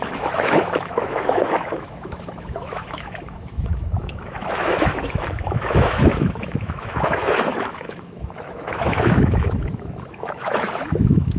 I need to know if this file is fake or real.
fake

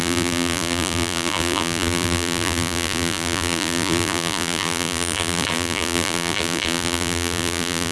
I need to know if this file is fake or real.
fake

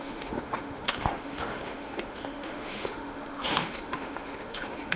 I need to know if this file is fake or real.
fake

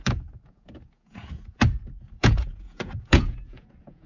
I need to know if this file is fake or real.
fake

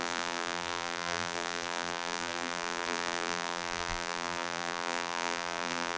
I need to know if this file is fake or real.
fake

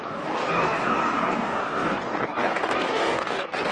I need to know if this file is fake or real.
fake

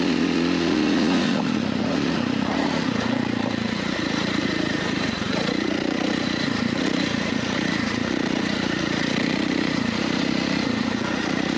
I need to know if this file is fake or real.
fake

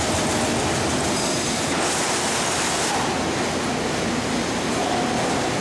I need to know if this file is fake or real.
real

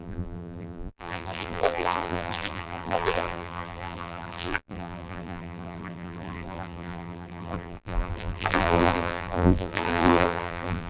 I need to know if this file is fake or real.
fake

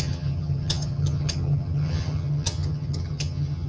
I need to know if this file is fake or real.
fake